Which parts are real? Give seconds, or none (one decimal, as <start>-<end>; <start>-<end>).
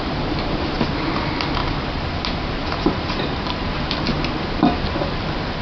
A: 0.0-1.6; 4.0-5.6